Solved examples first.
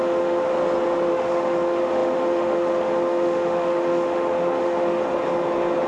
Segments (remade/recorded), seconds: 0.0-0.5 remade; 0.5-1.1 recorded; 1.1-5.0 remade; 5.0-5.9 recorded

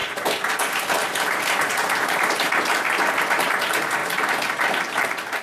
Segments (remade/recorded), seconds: 0.0-5.4 recorded

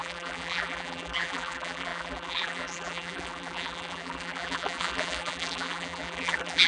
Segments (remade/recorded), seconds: 0.0-6.7 remade

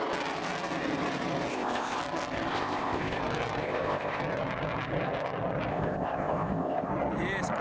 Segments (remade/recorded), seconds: 0.0-1.5 recorded; 1.5-2.0 remade; 2.0-2.5 recorded; 2.5-3.2 remade; 3.2-3.6 recorded; 3.6-4.2 remade; 4.2-5.7 recorded; 5.7-6.9 remade; 6.9-7.6 recorded

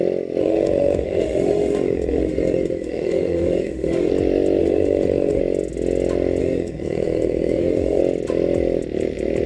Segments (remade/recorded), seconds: 0.0-0.4 recorded; 0.4-4.1 remade; 4.1-4.6 recorded; 4.6-5.4 remade; 5.4-6.4 recorded; 6.4-8.0 remade; 8.0-9.5 recorded

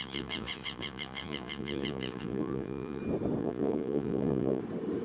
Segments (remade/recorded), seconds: 0.0-3.0 remade; 3.0-3.4 recorded; 3.4-4.6 remade; 4.6-5.0 recorded